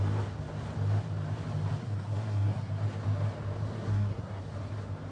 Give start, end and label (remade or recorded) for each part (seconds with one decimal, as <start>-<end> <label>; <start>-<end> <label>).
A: 0.0-1.8 recorded; 1.8-2.7 remade; 2.7-3.7 recorded; 3.7-4.4 remade; 4.4-5.1 recorded